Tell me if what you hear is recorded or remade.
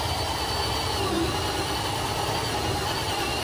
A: recorded